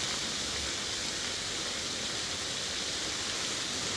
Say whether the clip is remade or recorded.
recorded